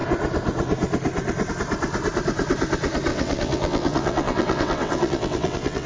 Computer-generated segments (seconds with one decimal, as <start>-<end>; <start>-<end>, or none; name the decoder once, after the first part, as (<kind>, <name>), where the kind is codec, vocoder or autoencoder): 3.1-5.9 (vocoder, WaveNeXt)